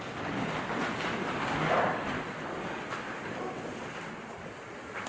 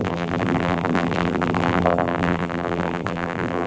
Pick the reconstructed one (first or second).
second